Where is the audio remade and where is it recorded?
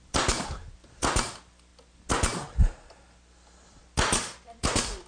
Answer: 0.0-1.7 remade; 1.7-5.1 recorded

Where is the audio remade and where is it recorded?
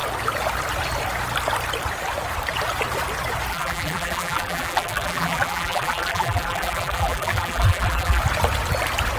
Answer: 0.0-3.5 recorded; 3.5-8.2 remade; 8.2-9.2 recorded